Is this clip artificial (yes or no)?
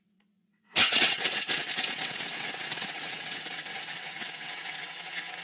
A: yes